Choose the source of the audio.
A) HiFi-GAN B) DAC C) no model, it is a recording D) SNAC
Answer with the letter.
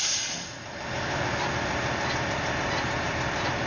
C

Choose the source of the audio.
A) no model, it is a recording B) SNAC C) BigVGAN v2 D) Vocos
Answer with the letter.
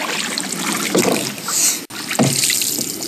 A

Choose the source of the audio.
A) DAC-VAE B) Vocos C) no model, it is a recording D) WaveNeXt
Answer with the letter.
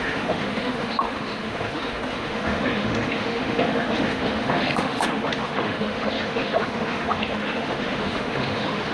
A